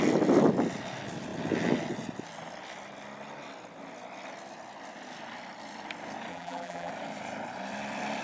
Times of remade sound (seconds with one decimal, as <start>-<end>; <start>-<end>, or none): 6.3-6.9